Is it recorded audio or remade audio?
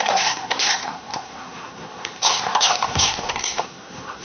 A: remade